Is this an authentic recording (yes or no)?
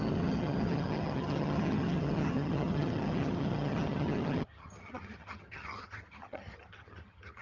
no